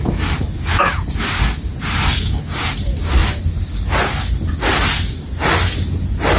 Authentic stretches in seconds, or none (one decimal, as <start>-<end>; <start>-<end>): 0.0-6.4